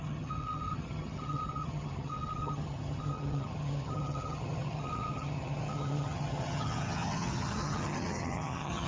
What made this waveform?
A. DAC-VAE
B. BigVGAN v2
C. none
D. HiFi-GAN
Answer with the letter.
D